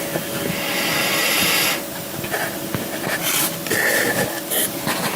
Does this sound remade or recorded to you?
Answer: recorded